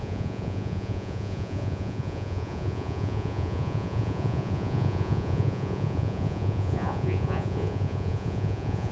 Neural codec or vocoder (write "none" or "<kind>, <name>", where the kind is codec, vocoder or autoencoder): vocoder, Vocos